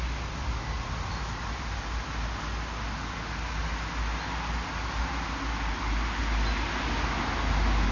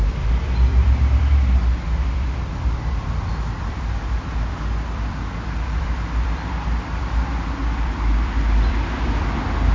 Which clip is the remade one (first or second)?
second